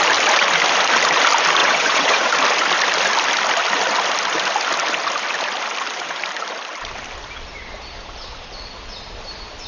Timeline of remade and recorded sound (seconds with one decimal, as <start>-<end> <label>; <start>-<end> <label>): 0.0-1.6 recorded; 1.6-2.3 remade; 2.3-9.7 recorded